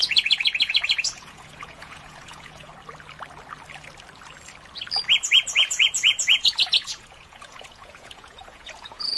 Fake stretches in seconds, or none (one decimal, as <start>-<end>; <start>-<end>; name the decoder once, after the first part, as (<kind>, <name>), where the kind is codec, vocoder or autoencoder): 0.0-2.7 (vocoder, Vocos); 5.2-9.2